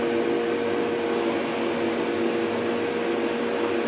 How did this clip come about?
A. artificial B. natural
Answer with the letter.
B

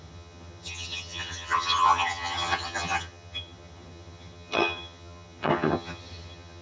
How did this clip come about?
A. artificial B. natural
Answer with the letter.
A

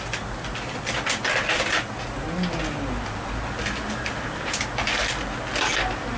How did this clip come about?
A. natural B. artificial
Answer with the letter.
A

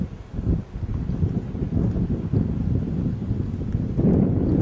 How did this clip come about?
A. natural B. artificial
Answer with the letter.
A